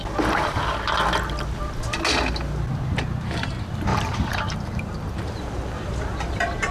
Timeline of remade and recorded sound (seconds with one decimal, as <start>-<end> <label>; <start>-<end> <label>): 0.0-3.9 recorded; 3.9-5.9 remade; 5.9-6.7 recorded